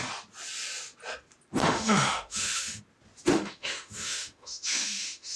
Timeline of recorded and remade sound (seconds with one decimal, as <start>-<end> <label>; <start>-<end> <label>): 0.0-1.6 recorded; 1.6-2.8 remade; 2.8-3.3 recorded; 3.3-5.4 remade